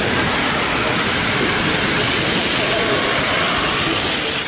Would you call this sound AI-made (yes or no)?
no